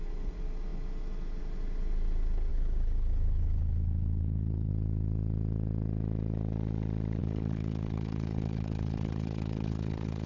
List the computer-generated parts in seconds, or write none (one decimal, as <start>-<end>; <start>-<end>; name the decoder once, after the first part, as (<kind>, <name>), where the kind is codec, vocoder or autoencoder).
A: 2.5-4.7 (codec, HILCodec); 7.2-10.3